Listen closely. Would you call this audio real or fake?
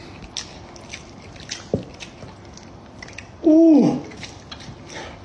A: real